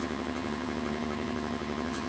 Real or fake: fake